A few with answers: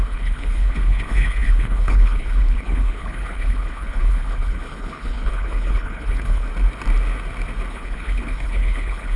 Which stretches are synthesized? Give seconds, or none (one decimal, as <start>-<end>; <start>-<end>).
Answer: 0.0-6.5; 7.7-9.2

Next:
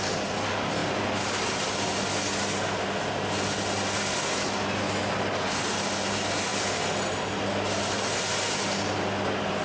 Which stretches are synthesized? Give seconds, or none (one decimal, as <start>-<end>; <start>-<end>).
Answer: none

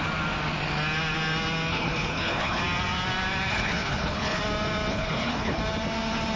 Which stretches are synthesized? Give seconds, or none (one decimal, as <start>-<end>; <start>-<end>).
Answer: 1.7-2.6; 3.5-4.4; 4.9-5.6

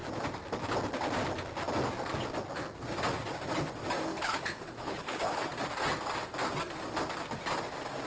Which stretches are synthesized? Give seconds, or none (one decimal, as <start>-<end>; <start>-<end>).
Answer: 4.1-5.5

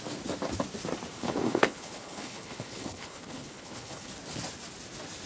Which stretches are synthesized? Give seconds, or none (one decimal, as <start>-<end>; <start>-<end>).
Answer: 1.2-4.1

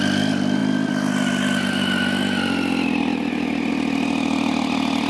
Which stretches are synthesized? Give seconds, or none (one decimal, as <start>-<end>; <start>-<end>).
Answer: none

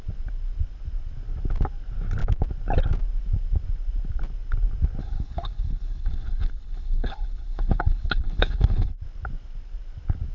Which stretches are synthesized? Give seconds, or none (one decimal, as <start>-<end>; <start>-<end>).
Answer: 5.0-8.9

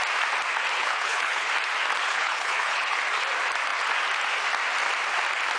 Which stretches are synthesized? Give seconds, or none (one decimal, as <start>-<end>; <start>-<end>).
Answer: 0.8-1.5; 2.1-3.0